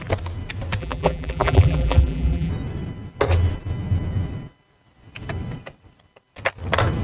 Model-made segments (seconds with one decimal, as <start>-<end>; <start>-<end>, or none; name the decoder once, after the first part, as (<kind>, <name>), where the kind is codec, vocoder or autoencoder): 0.8-2.5 (vocoder, BigVGAN v2)